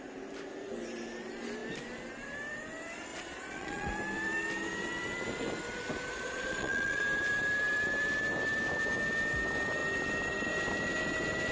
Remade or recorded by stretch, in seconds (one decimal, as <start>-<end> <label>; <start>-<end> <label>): 0.0-3.1 recorded; 3.1-3.9 remade; 3.9-6.1 recorded; 6.1-7.0 remade; 7.0-11.5 recorded